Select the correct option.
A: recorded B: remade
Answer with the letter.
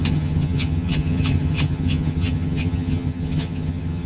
B